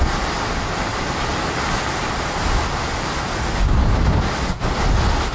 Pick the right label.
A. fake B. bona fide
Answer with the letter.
B